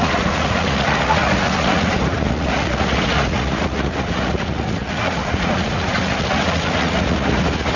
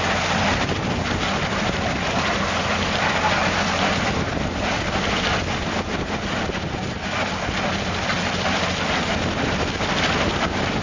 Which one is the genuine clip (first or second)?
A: second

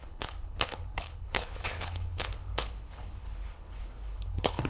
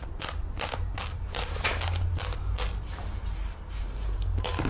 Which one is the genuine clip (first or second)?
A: second